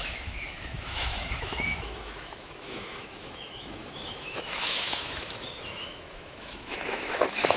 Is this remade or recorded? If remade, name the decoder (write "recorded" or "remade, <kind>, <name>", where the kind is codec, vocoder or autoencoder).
remade, autoencoder, DAC-VAE